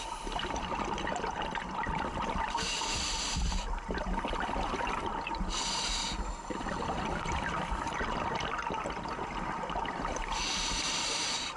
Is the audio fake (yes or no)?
yes